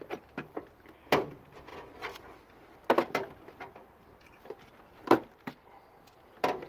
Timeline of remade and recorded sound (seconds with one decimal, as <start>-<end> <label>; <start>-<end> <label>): 0.0-4.9 recorded; 4.9-5.5 remade; 5.5-6.7 recorded